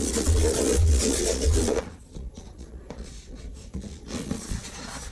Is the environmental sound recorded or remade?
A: remade